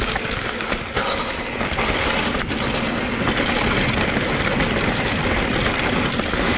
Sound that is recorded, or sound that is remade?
recorded